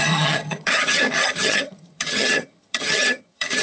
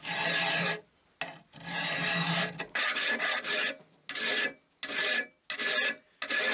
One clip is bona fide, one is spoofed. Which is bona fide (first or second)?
second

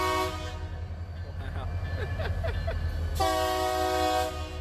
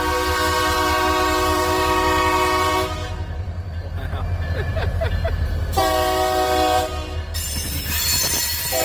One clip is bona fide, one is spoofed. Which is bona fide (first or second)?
first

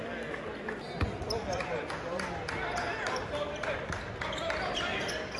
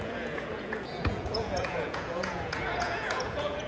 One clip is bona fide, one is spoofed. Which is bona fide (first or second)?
first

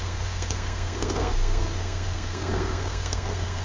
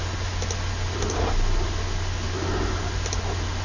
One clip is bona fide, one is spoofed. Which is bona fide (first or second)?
second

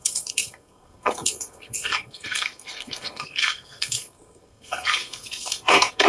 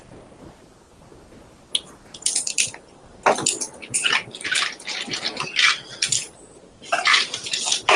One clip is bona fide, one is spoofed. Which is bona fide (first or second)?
second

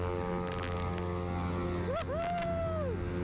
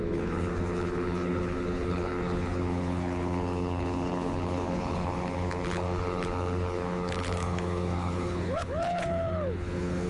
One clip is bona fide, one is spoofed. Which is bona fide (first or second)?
first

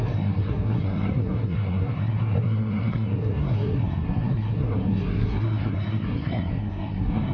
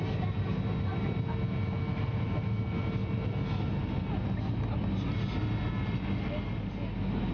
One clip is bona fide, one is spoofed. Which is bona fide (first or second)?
second